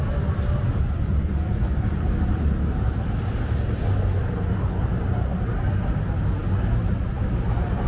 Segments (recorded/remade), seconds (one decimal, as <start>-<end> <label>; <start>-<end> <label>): 0.0-7.9 recorded